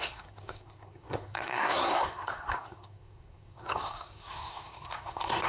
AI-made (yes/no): yes